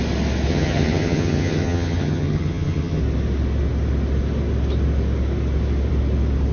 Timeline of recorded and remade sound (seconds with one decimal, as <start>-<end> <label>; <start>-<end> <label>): 0.0-0.5 recorded; 0.5-3.0 remade; 3.0-6.5 recorded